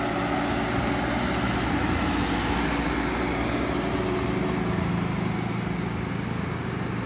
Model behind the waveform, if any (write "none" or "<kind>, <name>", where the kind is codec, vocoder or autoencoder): none